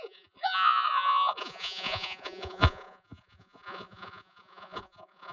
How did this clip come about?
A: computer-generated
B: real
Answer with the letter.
A